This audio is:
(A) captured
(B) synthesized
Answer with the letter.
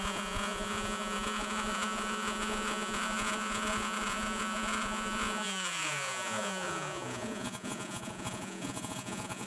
B